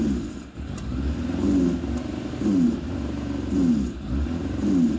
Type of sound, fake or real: real